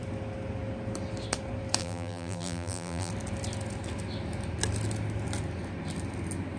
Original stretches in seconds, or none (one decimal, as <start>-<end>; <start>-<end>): 0.0-1.8; 3.1-6.6